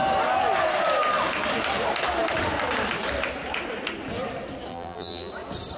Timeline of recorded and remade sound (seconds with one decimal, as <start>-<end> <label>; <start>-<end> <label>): 0.0-4.7 recorded; 4.7-5.3 remade; 5.3-5.8 recorded